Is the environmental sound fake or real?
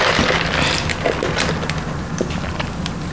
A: real